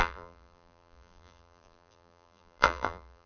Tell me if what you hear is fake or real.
fake